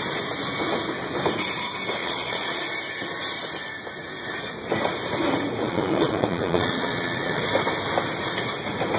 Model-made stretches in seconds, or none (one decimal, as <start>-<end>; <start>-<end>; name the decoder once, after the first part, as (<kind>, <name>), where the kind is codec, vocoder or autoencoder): 2.0-2.6 (vocoder, Vocos); 5.6-7.4